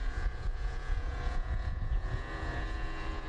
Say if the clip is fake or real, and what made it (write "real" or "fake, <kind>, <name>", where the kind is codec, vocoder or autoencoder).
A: fake, vocoder, Vocos